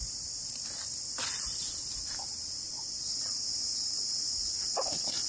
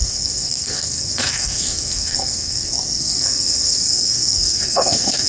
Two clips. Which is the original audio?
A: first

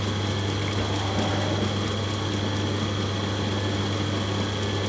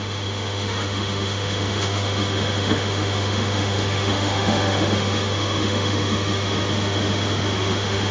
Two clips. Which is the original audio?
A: first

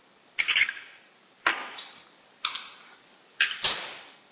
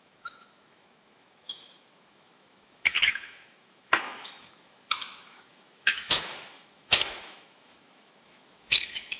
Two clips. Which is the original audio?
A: first